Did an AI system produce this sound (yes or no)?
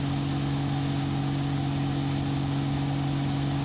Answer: no